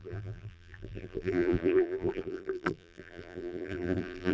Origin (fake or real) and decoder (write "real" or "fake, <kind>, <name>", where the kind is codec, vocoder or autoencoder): fake, vocoder, BigVGAN v2